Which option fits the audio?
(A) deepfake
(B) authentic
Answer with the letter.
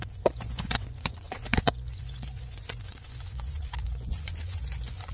A